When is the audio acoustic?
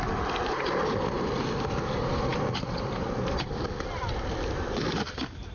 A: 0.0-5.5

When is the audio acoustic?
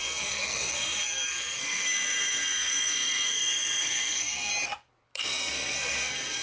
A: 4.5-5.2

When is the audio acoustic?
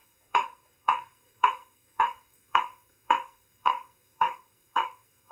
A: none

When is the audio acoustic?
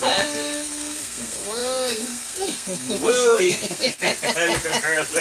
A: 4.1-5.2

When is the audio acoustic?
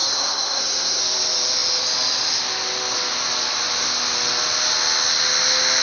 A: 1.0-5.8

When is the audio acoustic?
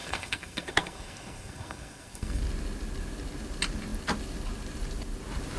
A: 2.4-5.6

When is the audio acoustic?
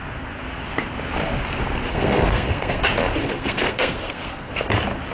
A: 0.0-1.9; 2.8-3.2; 4.5-5.1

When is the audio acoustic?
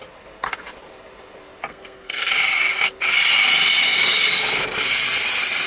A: 0.0-1.7; 2.3-5.7